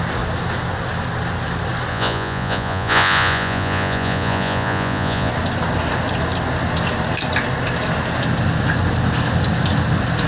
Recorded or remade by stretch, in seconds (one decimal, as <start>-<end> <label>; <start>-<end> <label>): 0.0-1.9 recorded; 1.9-5.3 remade; 5.3-10.3 recorded